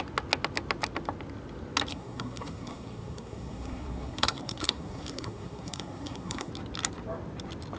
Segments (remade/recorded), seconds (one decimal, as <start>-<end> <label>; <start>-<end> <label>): 0.0-1.9 recorded; 1.9-6.5 remade; 6.5-7.8 recorded